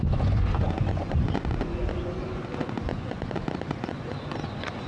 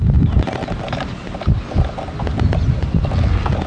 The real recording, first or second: second